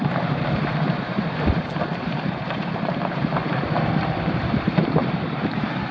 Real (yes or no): no